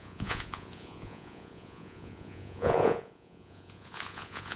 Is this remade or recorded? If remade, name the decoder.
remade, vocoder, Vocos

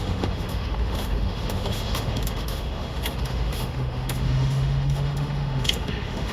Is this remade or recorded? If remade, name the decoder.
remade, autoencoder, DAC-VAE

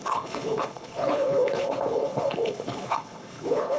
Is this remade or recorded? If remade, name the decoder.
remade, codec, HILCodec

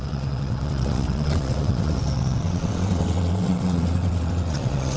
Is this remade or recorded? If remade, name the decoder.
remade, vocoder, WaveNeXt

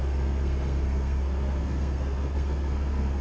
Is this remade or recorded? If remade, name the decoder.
remade, codec, SNAC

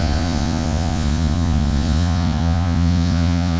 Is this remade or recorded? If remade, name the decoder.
remade, vocoder, Vocos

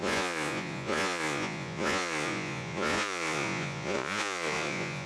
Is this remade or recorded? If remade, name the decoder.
remade, vocoder, Vocos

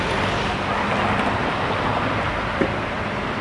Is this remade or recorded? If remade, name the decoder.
recorded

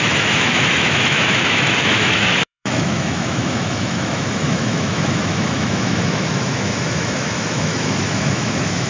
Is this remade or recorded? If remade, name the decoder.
remade, autoencoder, DAC-VAE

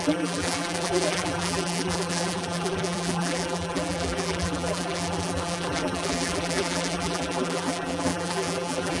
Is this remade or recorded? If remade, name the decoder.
remade, vocoder, BigVGAN v2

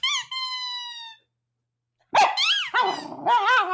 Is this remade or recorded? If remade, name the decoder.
recorded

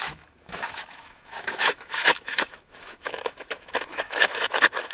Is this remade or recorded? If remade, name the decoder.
remade, autoencoder, DAC-VAE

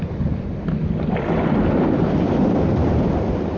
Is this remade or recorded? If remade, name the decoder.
recorded